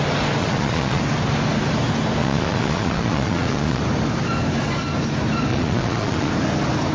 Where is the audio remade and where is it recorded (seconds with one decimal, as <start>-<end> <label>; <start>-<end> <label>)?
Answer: 0.0-0.4 recorded; 0.4-1.0 remade; 1.0-2.2 recorded; 2.2-3.8 remade; 3.8-5.5 recorded; 5.5-6.3 remade; 6.3-6.9 recorded